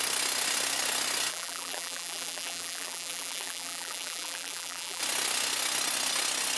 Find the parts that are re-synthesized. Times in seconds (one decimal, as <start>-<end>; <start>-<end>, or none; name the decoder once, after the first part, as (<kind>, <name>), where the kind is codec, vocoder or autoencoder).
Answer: 1.3-5.0 (vocoder, BigVGAN v2)